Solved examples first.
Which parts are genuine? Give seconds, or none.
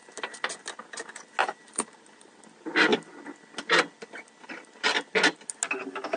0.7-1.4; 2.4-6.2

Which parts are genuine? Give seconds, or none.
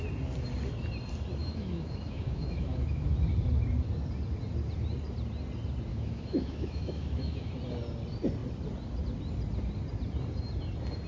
0.0-1.4; 3.1-5.9; 7.5-11.1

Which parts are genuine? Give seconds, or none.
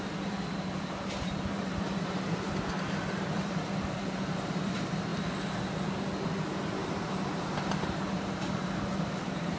5.1-6.9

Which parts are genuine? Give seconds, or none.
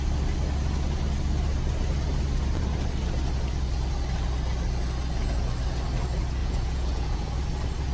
0.0-6.4; 7.4-7.9